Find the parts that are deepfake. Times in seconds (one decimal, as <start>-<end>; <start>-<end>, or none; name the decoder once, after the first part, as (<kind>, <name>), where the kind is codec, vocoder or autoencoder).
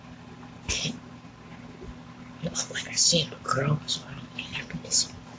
none